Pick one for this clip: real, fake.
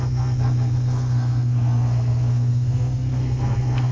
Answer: fake